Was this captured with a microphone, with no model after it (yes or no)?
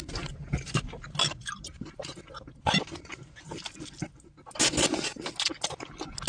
yes